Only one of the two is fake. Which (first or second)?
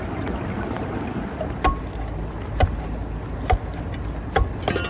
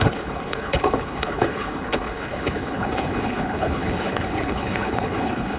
second